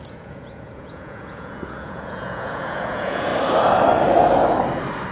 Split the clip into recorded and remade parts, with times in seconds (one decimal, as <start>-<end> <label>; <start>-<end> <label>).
0.0-3.3 remade; 3.3-5.1 recorded